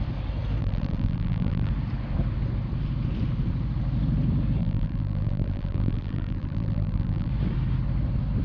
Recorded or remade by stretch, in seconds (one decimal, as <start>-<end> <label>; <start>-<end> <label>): 0.0-0.6 recorded; 0.6-1.7 remade; 1.7-4.6 recorded; 4.6-7.3 remade; 7.3-8.4 recorded